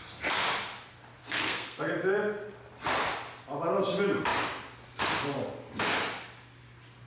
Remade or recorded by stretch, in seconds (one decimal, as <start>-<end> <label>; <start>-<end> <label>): 0.0-1.2 recorded; 1.2-1.8 remade; 1.8-7.1 recorded